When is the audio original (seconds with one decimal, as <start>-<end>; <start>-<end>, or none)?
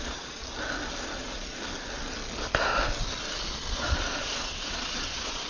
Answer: 0.4-3.7